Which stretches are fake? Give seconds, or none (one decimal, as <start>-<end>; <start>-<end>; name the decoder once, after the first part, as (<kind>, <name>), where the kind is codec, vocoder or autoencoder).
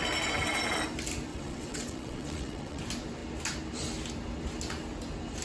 1.3-2.8 (vocoder, WaveNeXt)